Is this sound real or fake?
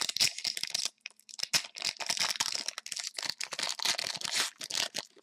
real